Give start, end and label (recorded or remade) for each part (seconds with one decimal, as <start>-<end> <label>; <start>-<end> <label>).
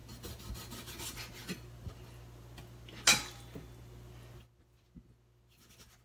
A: 0.0-6.0 recorded